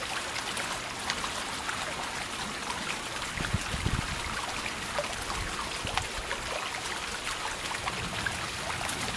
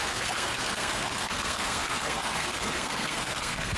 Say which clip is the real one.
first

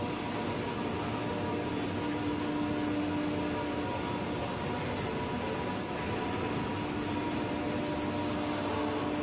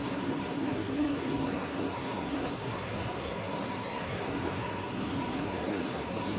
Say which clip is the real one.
first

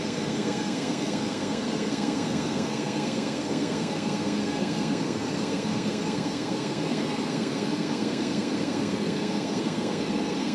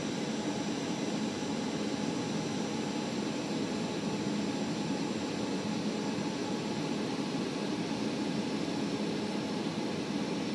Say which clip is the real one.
second